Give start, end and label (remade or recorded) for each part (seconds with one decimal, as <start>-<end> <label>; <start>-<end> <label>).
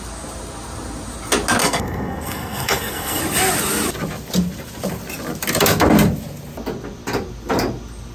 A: 0.0-1.6 recorded; 1.6-3.2 remade; 3.2-8.1 recorded